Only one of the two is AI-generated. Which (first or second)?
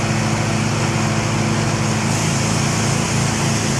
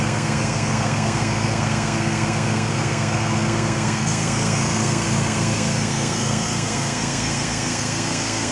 second